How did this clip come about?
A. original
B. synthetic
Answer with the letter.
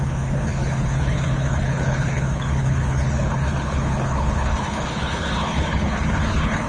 B